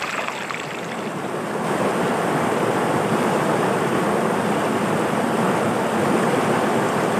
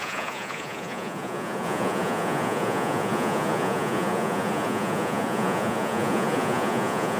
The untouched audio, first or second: first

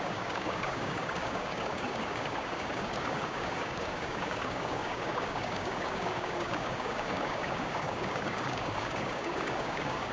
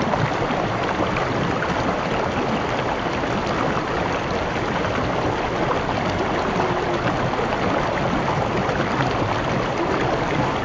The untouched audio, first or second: second